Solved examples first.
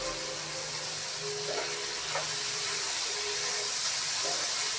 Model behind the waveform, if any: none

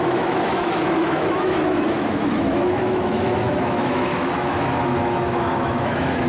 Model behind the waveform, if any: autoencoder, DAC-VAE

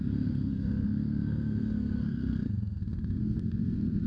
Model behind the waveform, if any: codec, SNAC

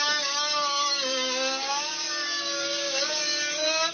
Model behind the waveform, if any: codec, DAC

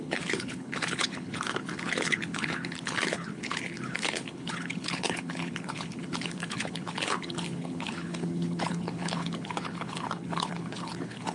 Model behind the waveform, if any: codec, HILCodec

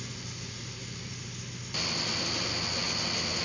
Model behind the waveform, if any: none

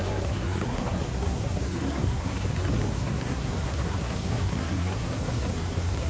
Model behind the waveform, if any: codec, SNAC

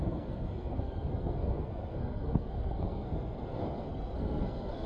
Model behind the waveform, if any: codec, SNAC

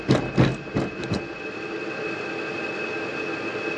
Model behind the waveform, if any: none